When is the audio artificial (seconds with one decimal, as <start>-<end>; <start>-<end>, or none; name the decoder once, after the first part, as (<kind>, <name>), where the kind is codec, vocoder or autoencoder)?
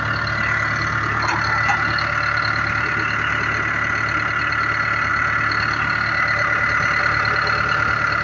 none